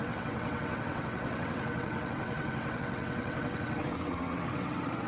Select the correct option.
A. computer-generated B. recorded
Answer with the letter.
A